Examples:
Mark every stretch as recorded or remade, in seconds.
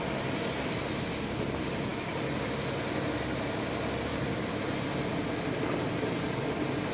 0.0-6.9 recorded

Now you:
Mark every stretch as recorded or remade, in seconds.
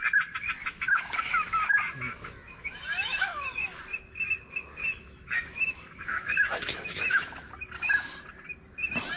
0.0-0.6 recorded; 0.6-3.8 remade; 3.8-4.8 recorded; 4.8-7.5 remade; 7.5-9.2 recorded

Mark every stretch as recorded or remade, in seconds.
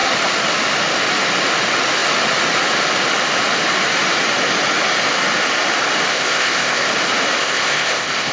0.0-6.1 recorded; 6.1-6.9 remade; 6.9-7.4 recorded; 7.4-8.3 remade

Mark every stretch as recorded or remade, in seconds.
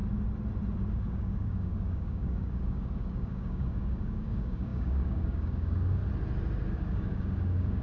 0.0-0.9 recorded; 0.9-6.0 remade; 6.0-6.7 recorded; 6.7-7.8 remade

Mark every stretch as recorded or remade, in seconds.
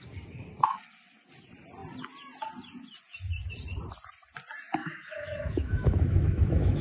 0.0-4.8 recorded; 4.8-6.8 remade